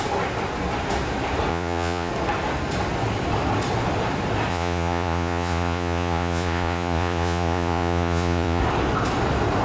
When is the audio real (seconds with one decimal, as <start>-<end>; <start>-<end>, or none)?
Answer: 0.0-1.5; 2.1-4.5; 8.6-9.6